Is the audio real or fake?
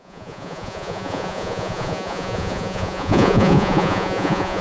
fake